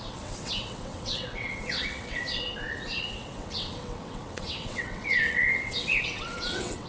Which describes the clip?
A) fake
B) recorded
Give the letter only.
A